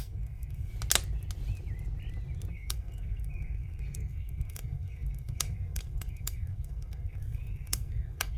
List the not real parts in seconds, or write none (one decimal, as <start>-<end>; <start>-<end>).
0.0-0.7; 2.5-8.4